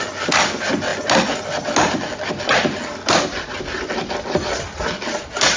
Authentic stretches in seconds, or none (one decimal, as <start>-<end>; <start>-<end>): 0.0-5.6